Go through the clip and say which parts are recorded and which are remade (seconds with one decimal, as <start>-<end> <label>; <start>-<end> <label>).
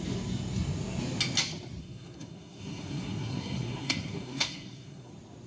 0.0-1.8 recorded; 1.8-5.1 remade; 5.1-5.5 recorded